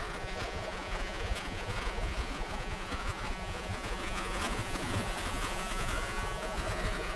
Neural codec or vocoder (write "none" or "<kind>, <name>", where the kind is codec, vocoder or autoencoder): vocoder, Vocos